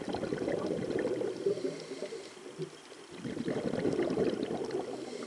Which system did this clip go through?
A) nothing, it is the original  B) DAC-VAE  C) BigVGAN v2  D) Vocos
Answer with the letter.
A